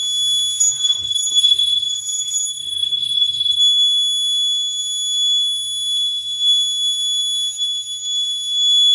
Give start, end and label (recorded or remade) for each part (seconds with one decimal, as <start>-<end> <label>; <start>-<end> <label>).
0.0-0.6 recorded; 0.6-3.6 remade; 3.6-8.9 recorded